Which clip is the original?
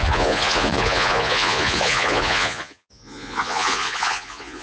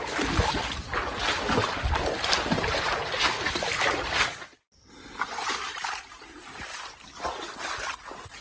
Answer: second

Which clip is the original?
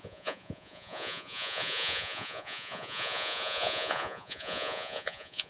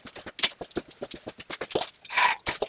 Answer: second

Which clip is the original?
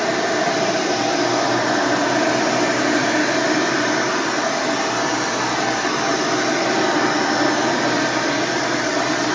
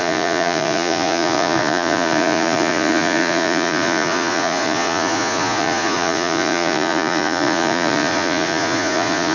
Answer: first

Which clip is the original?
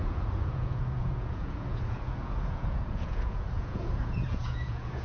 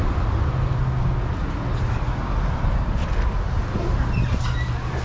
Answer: second